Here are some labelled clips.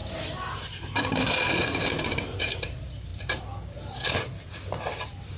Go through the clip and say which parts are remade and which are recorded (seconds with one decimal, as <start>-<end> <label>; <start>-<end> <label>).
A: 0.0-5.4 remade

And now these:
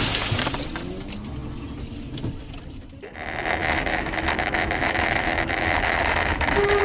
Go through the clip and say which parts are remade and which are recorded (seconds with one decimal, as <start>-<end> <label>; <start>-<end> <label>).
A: 0.0-3.6 recorded; 3.6-6.8 remade

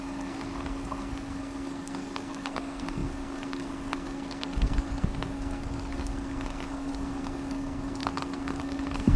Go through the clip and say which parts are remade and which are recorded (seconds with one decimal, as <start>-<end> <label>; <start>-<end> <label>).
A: 0.0-9.2 remade

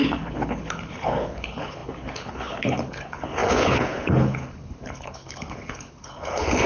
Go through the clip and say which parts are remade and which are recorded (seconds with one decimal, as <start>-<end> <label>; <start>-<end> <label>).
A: 0.0-6.7 remade